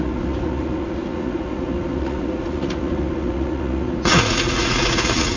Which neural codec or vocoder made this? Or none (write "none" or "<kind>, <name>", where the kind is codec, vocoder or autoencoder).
vocoder, Vocos